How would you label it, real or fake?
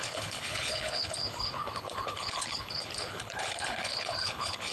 fake